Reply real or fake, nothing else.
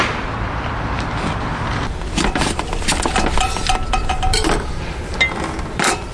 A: real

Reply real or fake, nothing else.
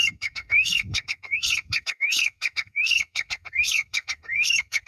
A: fake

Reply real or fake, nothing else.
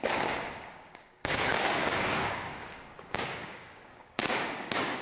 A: fake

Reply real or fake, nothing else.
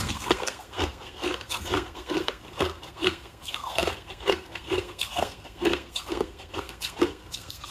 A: fake